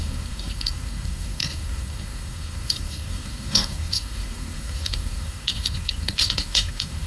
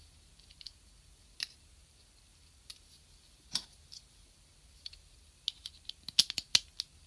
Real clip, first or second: second